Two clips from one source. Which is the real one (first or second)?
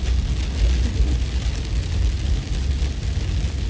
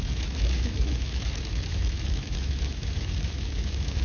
first